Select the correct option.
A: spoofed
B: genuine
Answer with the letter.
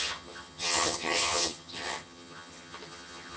A